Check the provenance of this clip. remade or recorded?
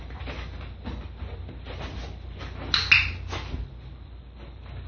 recorded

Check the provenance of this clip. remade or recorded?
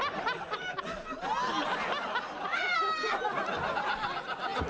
recorded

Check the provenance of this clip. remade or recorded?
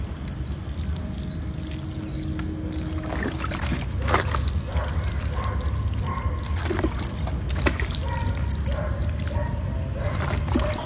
recorded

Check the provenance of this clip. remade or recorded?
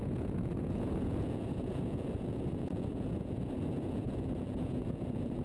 remade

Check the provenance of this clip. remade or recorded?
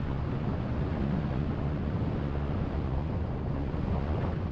remade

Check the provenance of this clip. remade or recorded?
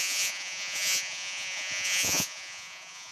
remade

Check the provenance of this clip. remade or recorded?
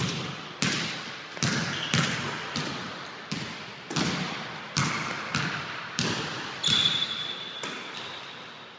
recorded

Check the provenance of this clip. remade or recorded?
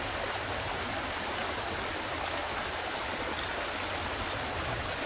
recorded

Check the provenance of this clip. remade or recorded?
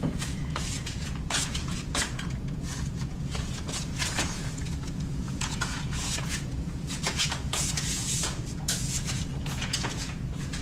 remade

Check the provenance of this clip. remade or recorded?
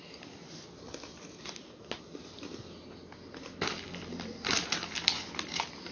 recorded